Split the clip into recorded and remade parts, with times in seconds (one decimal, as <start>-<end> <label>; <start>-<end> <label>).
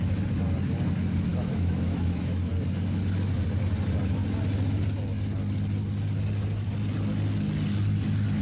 0.0-1.3 recorded; 1.3-2.5 remade; 2.5-8.4 recorded